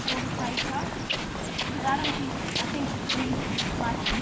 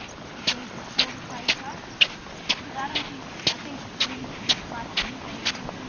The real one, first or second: second